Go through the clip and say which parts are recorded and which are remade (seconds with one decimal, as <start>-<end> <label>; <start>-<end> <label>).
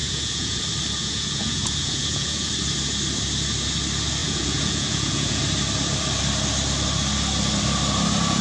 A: 0.0-0.6 remade; 0.6-1.0 recorded; 1.0-2.5 remade; 2.5-4.2 recorded; 4.2-5.4 remade; 5.4-8.4 recorded